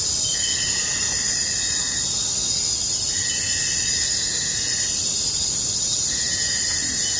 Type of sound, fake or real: real